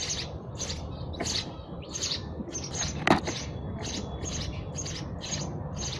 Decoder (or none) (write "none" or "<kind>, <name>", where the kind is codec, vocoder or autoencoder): none